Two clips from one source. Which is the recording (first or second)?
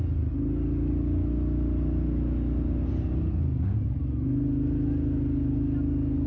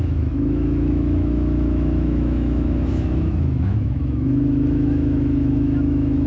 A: first